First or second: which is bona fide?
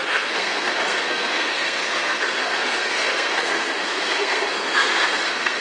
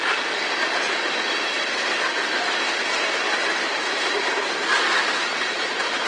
second